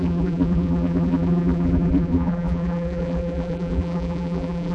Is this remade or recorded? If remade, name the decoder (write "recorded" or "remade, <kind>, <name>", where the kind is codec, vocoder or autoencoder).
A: remade, vocoder, BigVGAN v2